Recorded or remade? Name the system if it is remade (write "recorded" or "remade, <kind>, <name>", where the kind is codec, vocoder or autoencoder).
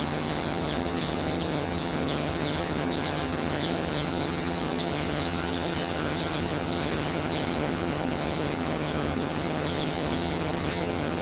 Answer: remade, vocoder, HiFi-GAN